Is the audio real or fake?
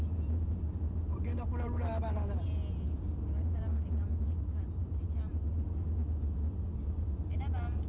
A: real